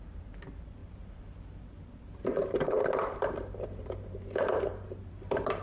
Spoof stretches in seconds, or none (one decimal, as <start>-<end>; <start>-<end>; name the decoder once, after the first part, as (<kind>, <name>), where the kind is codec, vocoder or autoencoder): 0.0-5.6 (vocoder, BigVGAN v2)